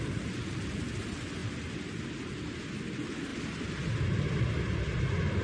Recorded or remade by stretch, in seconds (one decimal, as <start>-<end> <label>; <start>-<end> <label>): 0.0-5.4 recorded